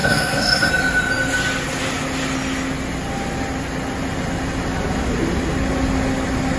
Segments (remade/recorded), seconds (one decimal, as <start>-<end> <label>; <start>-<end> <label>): 0.0-0.7 remade; 0.7-6.6 recorded